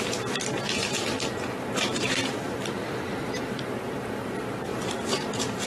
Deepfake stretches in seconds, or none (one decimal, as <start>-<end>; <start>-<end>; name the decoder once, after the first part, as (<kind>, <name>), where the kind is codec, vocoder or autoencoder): 0.0-5.7 (vocoder, BigVGAN v2)